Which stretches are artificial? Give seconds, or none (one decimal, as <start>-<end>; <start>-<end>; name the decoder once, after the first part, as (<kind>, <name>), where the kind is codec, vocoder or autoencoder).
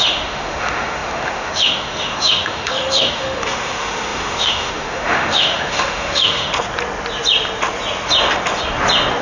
0.0-6.5 (autoencoder, DAC-VAE)